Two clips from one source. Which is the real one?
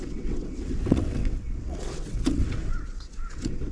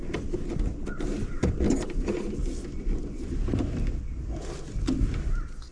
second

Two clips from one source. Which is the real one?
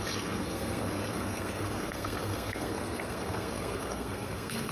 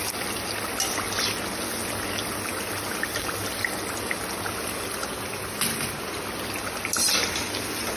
second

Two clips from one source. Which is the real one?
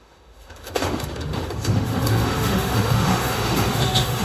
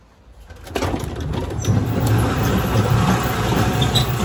second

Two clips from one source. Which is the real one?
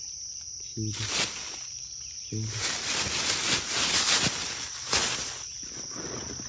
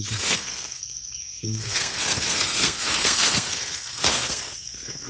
first